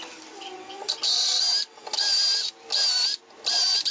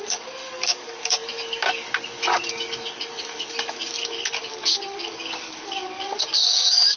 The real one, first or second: first